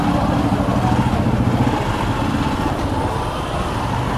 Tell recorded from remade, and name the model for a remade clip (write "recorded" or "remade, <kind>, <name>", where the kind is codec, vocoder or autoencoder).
recorded